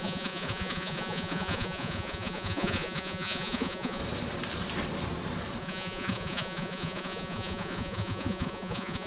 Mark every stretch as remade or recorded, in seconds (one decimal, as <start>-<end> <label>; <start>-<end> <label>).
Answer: 0.0-4.0 remade; 4.0-5.6 recorded; 5.6-9.1 remade